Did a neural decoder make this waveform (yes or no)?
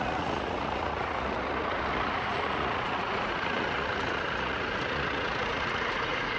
yes